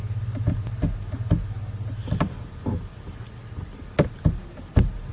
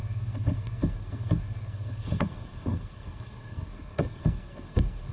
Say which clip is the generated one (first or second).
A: second